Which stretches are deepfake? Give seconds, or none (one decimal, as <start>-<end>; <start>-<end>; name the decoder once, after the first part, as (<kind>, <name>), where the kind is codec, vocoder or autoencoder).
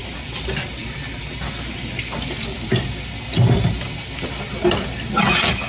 none